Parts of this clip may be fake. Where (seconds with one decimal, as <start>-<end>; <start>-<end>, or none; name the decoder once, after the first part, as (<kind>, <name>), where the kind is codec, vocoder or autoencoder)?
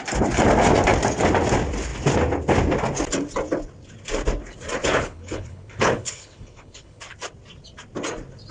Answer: 4.8-7.0 (codec, HILCodec)